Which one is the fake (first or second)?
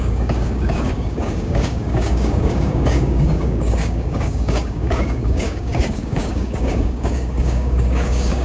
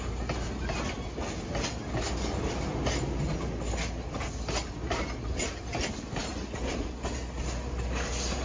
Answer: first